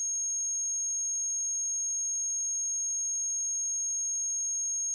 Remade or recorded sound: recorded